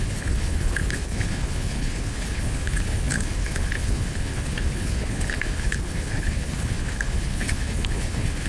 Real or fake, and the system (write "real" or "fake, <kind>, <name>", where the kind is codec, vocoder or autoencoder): fake, codec, HILCodec